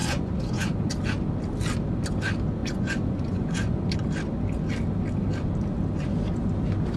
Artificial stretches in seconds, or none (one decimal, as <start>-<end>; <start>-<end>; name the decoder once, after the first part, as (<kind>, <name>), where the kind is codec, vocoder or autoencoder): 0.0-0.9 (vocoder, Vocos); 2.6-3.8